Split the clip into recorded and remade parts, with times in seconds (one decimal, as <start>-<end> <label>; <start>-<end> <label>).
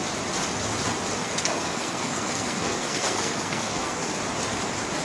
0.0-1.2 recorded; 1.2-4.2 remade; 4.2-5.0 recorded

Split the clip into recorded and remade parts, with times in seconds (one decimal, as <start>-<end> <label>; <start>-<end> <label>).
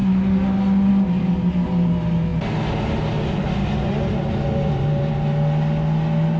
0.0-6.4 recorded